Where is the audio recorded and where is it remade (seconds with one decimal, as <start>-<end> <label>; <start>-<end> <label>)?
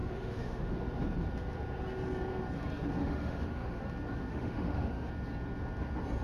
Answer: 0.0-0.7 remade; 0.7-3.0 recorded; 3.0-3.8 remade; 3.8-4.3 recorded; 4.3-5.1 remade; 5.1-6.2 recorded